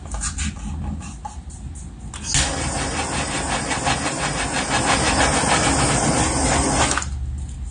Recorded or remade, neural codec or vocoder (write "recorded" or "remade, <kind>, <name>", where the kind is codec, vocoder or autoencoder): recorded